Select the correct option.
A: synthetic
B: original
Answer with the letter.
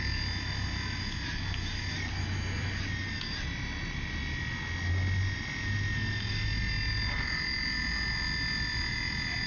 B